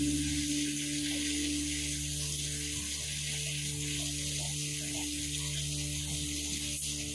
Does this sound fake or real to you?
real